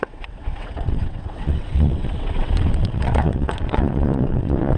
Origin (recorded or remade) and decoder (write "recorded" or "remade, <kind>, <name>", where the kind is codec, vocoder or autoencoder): remade, vocoder, WaveNeXt